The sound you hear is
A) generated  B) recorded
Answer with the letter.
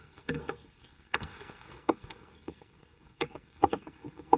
A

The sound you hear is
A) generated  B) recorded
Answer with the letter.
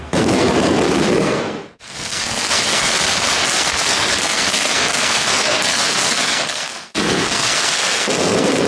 A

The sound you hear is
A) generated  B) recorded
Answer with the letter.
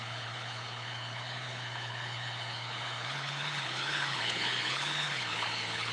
A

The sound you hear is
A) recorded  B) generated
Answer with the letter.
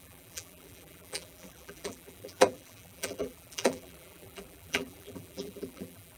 B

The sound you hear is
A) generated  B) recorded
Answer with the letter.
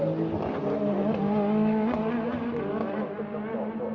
B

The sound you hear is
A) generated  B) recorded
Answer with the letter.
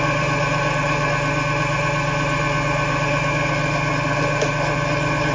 B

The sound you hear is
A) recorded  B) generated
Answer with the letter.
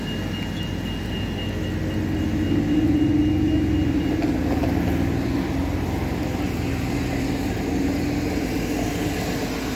A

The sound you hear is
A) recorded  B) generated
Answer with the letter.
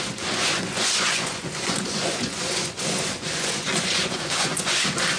B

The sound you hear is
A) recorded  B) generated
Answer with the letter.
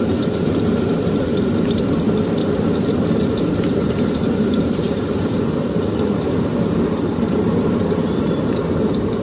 B